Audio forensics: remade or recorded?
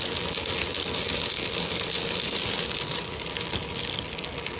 recorded